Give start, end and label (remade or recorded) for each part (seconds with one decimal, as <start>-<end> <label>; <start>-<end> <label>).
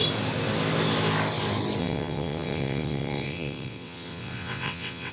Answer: 0.0-1.8 recorded; 1.8-5.1 remade